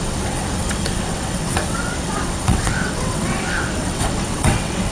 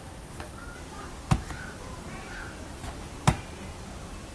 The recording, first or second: second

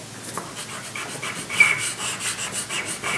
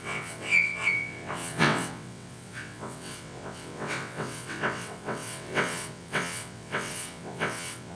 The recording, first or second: first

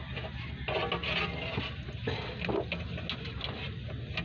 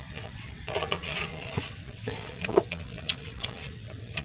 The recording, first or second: first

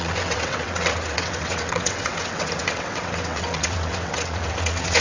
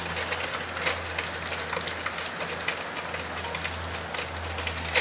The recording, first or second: second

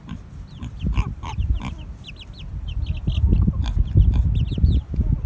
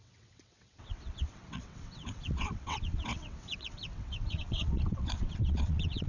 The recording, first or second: first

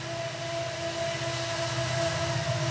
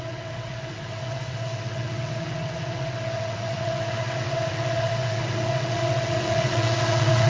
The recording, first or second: first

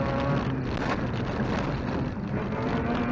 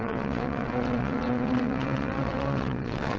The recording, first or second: first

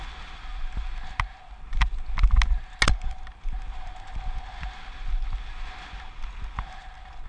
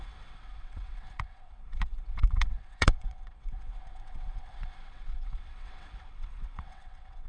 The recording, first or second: first